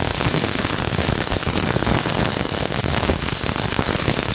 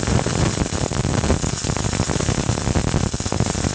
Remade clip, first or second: first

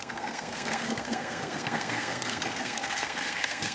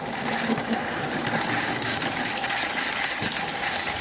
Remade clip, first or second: first